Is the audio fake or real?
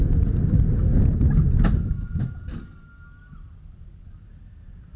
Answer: real